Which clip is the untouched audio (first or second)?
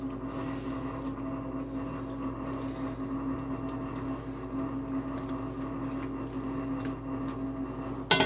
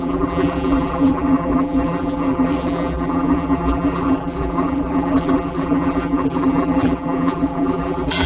first